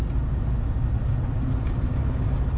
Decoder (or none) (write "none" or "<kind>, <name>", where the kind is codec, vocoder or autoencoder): none